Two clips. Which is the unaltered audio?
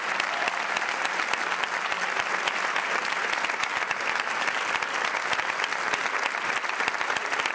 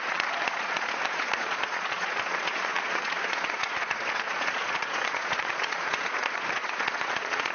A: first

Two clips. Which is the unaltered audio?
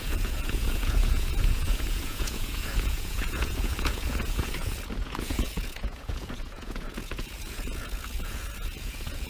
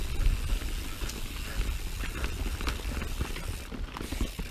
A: second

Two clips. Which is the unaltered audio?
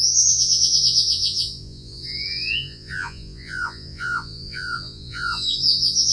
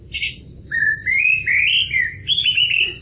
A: second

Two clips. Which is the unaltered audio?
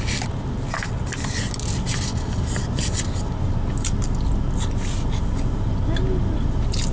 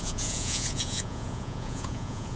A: first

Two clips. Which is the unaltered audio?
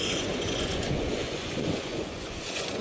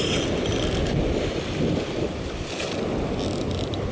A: second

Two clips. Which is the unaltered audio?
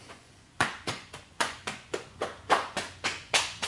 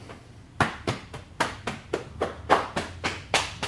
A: second